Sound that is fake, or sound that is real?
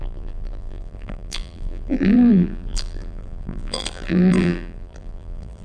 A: fake